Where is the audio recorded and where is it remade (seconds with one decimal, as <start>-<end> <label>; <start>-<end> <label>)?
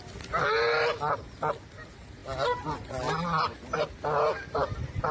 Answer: 0.0-5.1 recorded